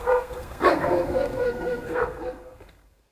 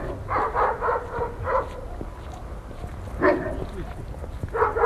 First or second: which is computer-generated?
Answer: first